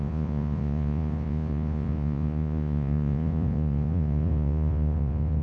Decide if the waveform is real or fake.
fake